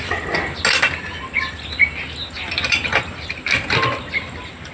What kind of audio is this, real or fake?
real